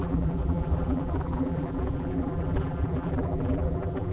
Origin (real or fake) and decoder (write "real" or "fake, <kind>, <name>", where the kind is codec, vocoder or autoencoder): fake, vocoder, BigVGAN v2